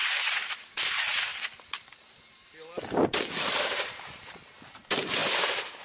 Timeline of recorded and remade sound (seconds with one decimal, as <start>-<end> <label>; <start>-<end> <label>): 0.0-5.2 recorded; 5.2-5.8 remade